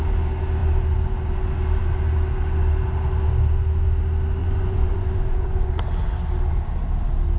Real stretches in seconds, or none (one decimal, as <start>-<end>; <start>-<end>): 0.0-4.4; 5.7-7.4